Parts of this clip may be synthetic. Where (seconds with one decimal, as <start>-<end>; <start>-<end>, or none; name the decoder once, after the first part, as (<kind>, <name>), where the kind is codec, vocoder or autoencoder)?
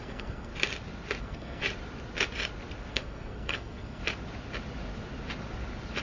0.0-0.5 (codec, SNAC); 1.2-1.6; 2.9-4.0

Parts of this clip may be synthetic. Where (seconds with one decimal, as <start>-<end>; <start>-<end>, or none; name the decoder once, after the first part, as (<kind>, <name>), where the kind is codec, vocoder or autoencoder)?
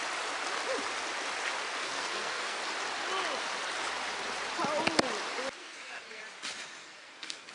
1.8-2.6 (codec, SNAC); 5.6-6.2; 6.8-7.5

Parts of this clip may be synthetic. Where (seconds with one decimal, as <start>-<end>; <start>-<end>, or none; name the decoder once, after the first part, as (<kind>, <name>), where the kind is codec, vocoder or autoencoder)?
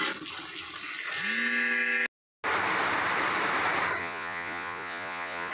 4.0-5.5 (vocoder, Vocos)